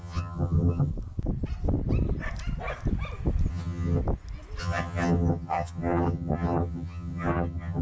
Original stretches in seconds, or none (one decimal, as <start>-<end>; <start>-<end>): 0.9-3.5; 4.0-4.6